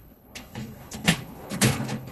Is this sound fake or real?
fake